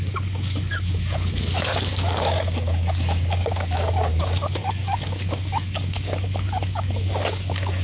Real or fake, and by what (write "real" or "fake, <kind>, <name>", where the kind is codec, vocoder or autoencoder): fake, codec, DAC